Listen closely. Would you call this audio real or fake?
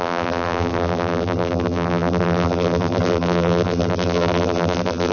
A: fake